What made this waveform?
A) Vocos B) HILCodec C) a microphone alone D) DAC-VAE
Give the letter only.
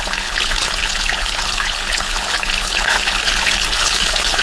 B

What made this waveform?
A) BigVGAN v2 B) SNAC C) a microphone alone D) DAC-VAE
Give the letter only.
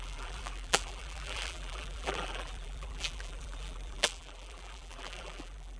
A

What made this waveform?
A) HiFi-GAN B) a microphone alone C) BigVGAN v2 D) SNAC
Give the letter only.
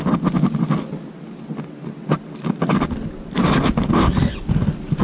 B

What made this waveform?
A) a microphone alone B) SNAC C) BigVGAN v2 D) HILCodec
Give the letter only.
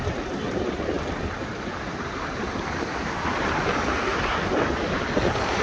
A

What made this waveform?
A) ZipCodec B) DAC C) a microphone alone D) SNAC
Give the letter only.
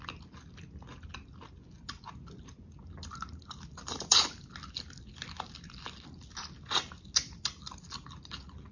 C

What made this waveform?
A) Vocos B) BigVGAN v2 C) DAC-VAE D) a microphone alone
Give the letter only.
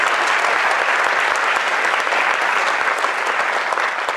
D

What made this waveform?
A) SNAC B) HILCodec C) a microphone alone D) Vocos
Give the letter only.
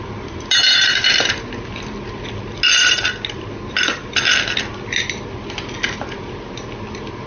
C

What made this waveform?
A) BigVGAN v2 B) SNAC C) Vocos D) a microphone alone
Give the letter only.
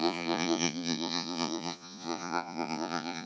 C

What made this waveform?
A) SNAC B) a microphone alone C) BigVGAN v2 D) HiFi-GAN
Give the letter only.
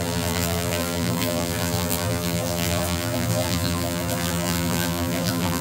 C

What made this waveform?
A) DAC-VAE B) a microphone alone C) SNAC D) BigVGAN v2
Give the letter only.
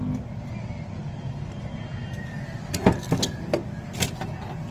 B